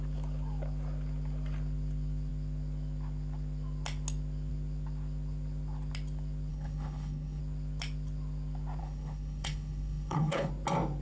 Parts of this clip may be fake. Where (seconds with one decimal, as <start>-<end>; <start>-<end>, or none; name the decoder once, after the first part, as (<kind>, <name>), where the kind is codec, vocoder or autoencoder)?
6.5-7.4 (codec, HILCodec); 8.8-10.5